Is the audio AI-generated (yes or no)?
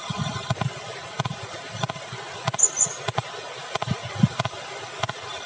no